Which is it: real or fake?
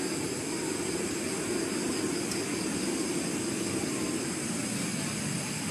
real